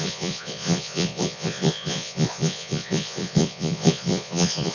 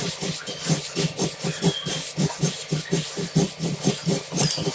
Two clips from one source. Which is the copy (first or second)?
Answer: first